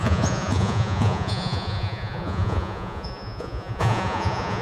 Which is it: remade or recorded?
remade